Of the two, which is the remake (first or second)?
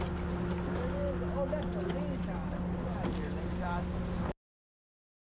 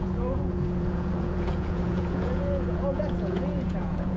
second